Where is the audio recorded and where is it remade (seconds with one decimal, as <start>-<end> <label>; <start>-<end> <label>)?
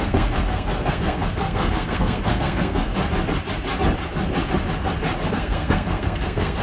0.0-2.9 remade; 2.9-5.3 recorded; 5.3-6.6 remade